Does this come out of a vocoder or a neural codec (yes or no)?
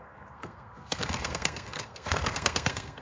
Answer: yes